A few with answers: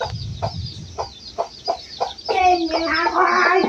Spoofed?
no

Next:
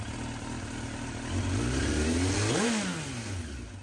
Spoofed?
no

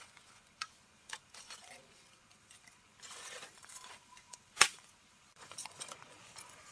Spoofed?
yes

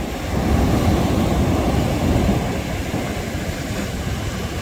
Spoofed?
no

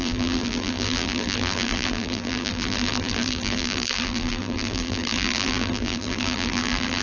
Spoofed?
yes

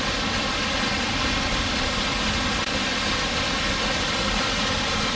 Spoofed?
no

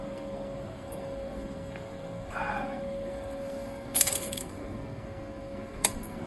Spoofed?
yes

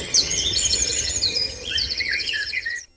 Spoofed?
yes